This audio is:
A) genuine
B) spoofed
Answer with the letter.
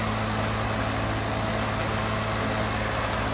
A